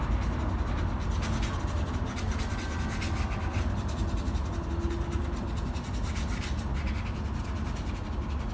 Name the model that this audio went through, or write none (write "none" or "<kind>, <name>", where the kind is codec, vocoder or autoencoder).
none